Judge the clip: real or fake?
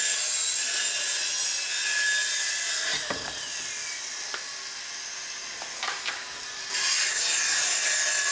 real